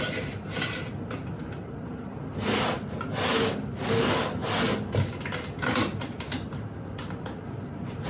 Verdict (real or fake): real